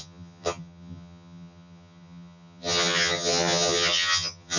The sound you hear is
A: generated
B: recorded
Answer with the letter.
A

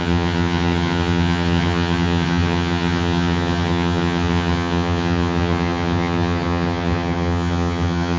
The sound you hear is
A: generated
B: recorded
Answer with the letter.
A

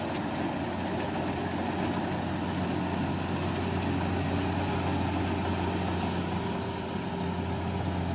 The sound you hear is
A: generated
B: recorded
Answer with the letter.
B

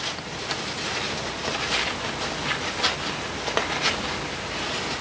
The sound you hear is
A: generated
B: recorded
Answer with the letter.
B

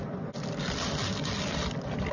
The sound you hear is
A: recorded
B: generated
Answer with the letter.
A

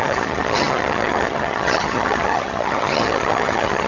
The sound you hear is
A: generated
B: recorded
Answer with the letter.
A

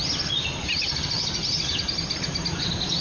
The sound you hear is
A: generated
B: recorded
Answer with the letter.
B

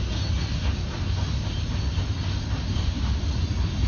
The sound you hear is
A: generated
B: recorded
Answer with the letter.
B